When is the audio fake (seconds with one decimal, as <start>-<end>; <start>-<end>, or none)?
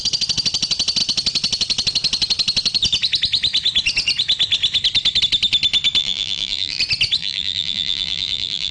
6.0-6.8; 7.2-8.7